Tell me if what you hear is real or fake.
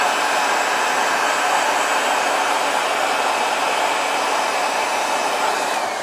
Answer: real